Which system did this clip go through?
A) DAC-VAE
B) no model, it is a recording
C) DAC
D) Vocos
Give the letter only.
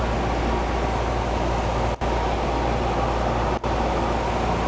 B